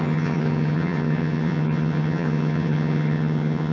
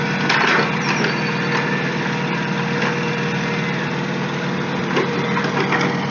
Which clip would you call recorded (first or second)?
second